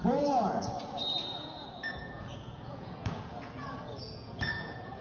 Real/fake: fake